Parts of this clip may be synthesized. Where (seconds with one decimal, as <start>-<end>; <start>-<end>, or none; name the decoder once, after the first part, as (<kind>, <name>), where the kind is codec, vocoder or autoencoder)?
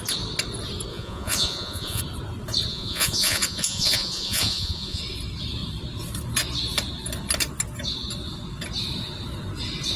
0.9-2.0 (vocoder, Vocos); 2.7-5.0